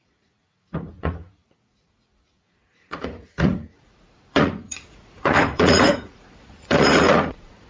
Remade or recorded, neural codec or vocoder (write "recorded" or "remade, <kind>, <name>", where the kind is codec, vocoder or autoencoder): remade, vocoder, Vocos